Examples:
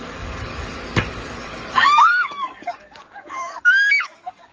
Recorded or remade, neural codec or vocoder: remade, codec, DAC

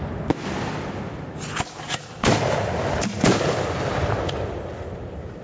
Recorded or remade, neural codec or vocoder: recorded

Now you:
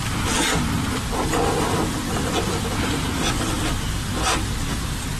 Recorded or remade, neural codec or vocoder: recorded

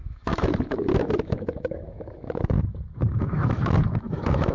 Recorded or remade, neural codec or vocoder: remade, autoencoder, DAC-VAE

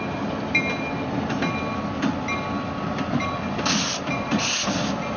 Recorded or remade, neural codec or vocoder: recorded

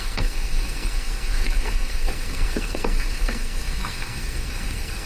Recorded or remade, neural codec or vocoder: remade, codec, SNAC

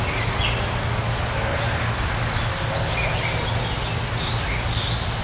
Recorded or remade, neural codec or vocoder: recorded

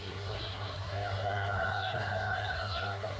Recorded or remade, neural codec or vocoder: remade, codec, SNAC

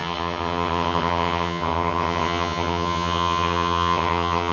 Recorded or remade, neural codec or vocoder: remade, vocoder, HiFi-GAN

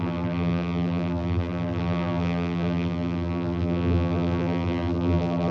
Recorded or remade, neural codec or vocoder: remade, vocoder, BigVGAN v2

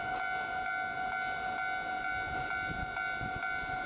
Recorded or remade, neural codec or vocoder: recorded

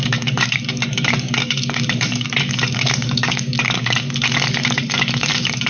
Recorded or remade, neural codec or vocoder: remade, codec, DAC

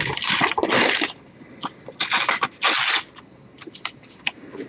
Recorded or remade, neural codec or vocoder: recorded